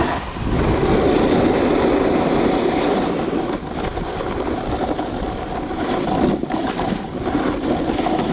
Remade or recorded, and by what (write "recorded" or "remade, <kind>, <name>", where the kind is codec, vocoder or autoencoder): recorded